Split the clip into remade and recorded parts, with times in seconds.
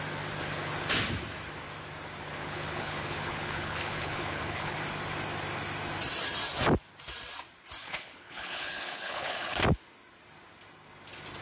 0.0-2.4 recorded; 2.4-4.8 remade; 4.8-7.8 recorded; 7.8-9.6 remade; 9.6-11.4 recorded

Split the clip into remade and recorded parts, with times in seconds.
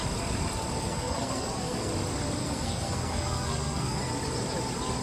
0.0-0.8 recorded; 0.8-1.9 remade; 1.9-2.4 recorded; 2.4-4.1 remade; 4.1-5.0 recorded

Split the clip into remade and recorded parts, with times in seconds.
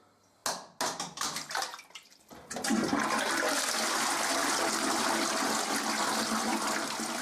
0.0-7.2 recorded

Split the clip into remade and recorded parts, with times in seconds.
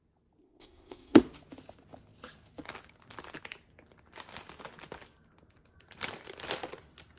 0.0-0.4 recorded; 0.4-1.2 remade; 1.2-7.2 recorded